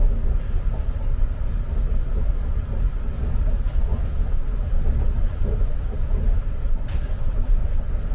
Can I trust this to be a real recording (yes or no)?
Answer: yes